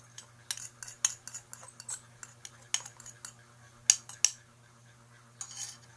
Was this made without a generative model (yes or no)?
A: yes